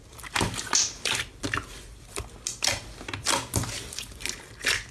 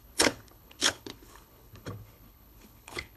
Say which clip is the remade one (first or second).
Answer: second